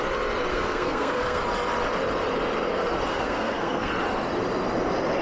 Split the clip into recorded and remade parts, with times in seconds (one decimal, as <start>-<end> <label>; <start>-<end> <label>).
0.0-0.5 recorded; 0.5-1.4 remade; 1.4-3.1 recorded; 3.1-3.9 remade; 3.9-5.2 recorded